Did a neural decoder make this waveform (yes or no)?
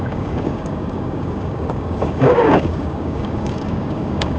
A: yes